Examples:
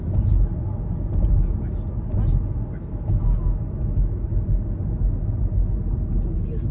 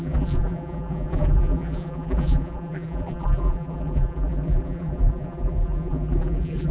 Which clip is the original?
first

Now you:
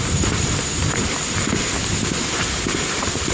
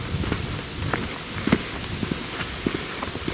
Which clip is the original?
second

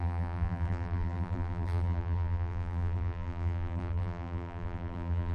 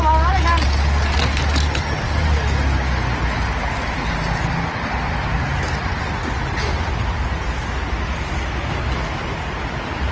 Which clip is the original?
second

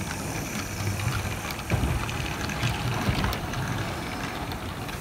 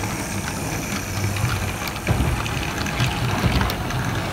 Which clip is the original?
second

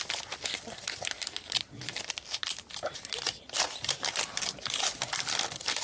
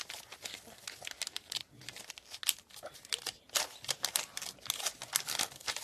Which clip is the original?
second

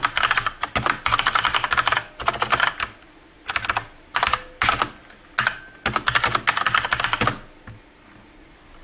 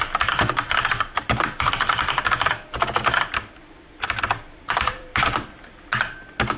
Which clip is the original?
first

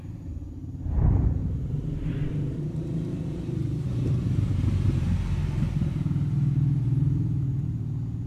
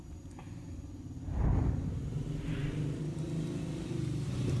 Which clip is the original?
second